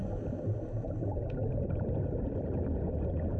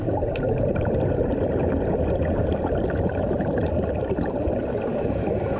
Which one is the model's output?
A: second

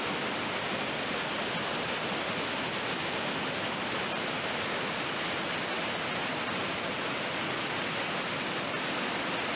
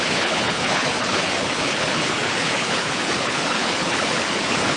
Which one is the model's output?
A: second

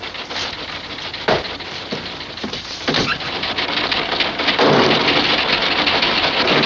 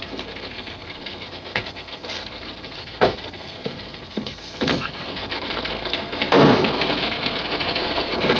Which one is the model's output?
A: second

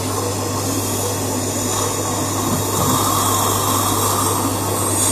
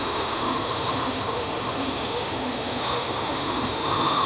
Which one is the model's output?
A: second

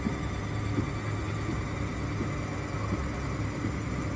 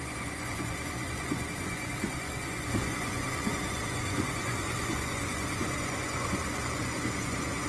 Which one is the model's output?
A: second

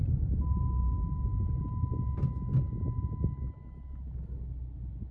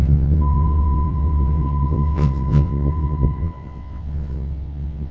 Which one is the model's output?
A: second